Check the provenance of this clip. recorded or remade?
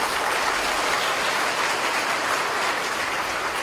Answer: recorded